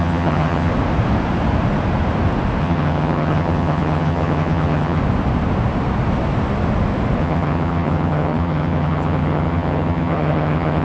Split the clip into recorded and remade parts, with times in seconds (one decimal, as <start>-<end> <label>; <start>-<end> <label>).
0.0-0.7 remade; 0.7-2.6 recorded; 2.6-5.0 remade; 5.0-7.2 recorded; 7.2-10.8 remade